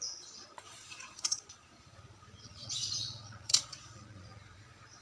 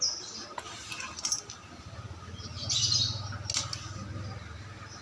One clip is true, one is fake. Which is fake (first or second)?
first